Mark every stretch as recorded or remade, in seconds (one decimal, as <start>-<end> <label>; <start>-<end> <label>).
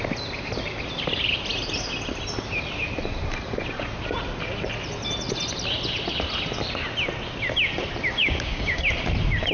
0.0-8.2 recorded; 8.2-8.8 remade; 8.8-9.5 recorded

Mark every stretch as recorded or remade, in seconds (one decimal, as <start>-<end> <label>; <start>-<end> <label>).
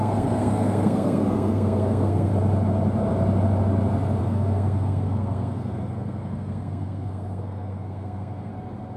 0.0-2.3 remade; 2.3-4.2 recorded; 4.2-8.5 remade; 8.5-9.0 recorded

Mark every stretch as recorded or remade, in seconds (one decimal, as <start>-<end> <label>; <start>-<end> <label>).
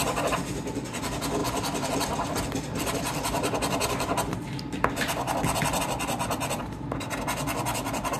0.0-1.4 recorded; 1.4-5.8 remade; 5.8-8.2 recorded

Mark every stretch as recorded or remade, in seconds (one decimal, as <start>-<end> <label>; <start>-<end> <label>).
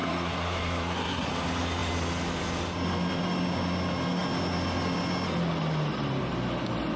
0.0-1.3 remade; 1.3-7.0 recorded